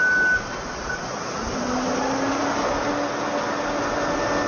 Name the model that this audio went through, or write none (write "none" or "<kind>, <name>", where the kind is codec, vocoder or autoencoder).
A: none